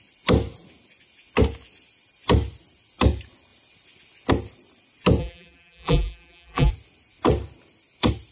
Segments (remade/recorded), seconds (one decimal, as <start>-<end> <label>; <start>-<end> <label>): 0.0-5.2 recorded; 5.2-6.7 remade; 6.7-8.3 recorded